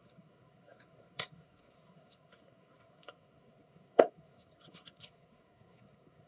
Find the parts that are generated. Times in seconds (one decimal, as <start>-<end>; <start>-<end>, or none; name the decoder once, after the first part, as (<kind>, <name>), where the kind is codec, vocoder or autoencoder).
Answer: 0.0-6.3 (codec, SNAC)